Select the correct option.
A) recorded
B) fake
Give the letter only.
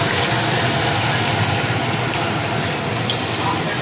A